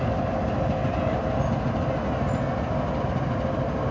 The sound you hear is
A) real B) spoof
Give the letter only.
A